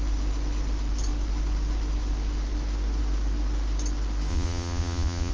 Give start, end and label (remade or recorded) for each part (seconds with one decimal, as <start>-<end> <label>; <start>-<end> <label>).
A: 0.0-4.3 recorded; 4.3-5.3 remade